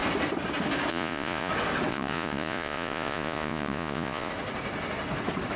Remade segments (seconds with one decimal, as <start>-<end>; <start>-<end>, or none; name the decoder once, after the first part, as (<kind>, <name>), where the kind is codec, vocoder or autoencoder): 0.9-1.5 (vocoder, Vocos); 1.9-4.3